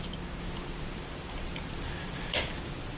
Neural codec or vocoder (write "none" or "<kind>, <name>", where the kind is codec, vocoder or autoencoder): vocoder, BigVGAN v2